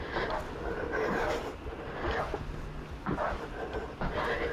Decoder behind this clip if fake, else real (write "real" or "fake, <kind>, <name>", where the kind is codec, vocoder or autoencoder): real